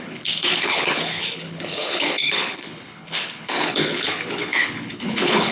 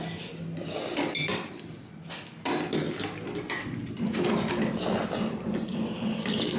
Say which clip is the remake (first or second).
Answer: first